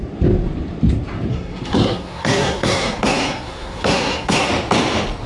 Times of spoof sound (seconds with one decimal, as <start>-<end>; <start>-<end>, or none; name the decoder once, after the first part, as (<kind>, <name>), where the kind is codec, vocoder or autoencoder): 1.3-4.5 (codec, SNAC)